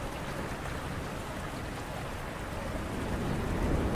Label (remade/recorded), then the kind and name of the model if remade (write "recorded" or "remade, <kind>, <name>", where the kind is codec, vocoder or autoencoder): recorded